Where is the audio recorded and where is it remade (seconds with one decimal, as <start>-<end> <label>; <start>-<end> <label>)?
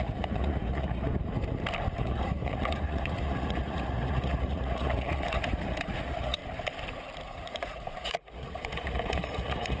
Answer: 0.0-1.1 remade; 1.1-2.0 recorded; 2.0-6.4 remade; 6.4-7.3 recorded; 7.3-9.8 remade